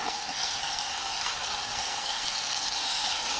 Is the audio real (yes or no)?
no